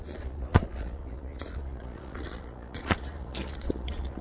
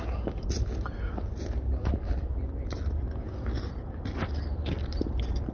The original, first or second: second